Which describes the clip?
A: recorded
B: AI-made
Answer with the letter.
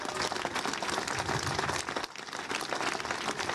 A